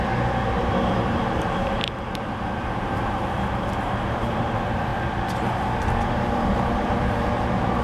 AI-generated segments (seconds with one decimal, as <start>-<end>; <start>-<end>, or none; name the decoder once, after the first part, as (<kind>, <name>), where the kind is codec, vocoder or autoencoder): 0.0-4.9 (vocoder, BigVGAN v2); 6.1-7.8